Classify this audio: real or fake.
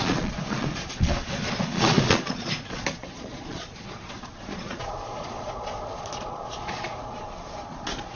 fake